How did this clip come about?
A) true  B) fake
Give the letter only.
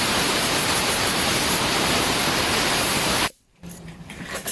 B